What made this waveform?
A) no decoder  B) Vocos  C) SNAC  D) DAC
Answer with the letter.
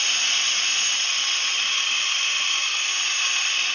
A